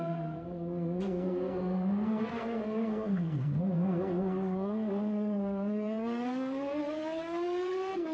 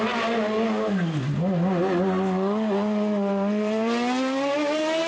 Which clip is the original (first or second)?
second